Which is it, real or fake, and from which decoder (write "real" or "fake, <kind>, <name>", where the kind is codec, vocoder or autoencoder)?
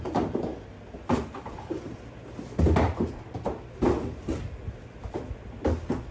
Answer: real